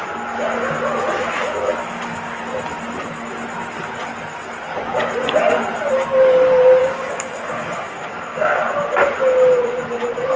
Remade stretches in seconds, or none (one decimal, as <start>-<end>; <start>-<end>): 1.8-2.4; 6.8-8.6